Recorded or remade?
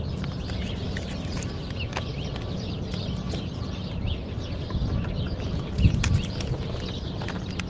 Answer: recorded